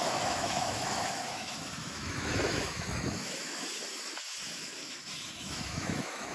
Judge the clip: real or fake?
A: fake